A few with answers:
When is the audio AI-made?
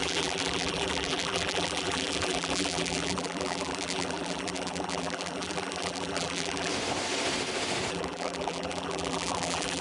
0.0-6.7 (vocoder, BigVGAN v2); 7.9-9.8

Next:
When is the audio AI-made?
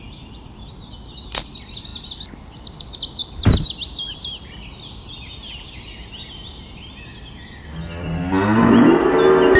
none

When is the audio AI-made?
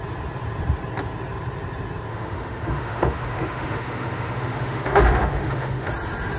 2.1-5.9 (autoencoder, DAC-VAE)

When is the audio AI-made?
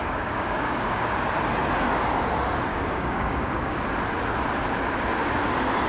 0.0-1.2 (codec, DAC); 2.7-3.8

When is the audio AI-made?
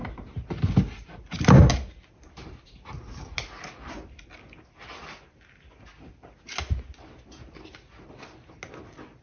none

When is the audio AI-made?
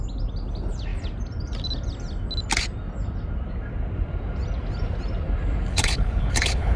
5.7-6.8 (codec, HILCodec)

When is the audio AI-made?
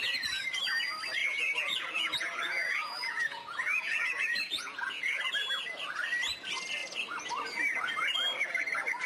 1.2-5.2 (vocoder, Vocos)